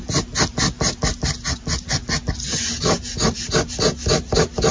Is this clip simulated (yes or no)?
no